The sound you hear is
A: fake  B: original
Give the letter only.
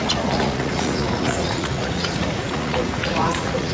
A